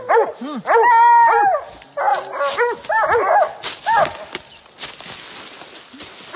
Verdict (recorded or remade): recorded